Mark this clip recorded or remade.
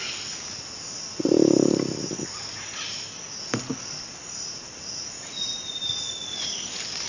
recorded